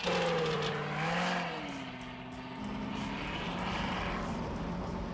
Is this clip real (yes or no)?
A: yes